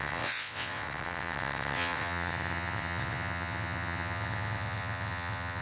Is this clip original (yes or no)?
no